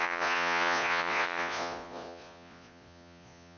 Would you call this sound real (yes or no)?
no